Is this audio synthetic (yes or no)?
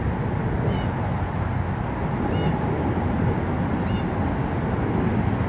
no